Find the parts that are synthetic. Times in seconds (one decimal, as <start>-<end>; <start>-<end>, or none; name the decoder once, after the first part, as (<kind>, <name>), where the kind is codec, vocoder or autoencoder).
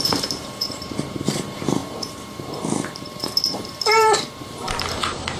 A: 0.0-5.4 (vocoder, BigVGAN v2)